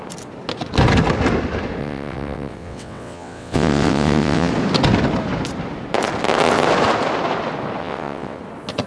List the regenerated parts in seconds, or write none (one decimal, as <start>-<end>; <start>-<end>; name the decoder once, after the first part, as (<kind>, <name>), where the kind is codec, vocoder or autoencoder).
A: 1.8-4.5 (vocoder, WaveNeXt); 7.8-8.4